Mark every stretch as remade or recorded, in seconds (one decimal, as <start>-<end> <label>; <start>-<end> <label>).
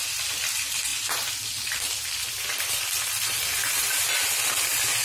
0.0-5.0 recorded